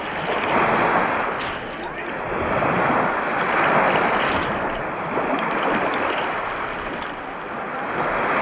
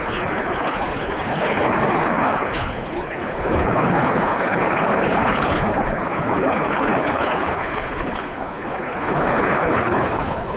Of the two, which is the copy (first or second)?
second